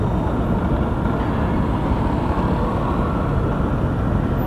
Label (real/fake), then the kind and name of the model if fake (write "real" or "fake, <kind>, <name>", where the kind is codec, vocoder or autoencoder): real